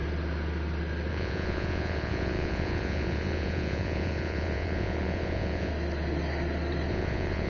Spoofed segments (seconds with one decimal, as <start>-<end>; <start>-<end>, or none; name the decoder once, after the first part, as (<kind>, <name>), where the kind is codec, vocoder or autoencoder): 1.1-5.7 (vocoder, Vocos); 6.9-7.5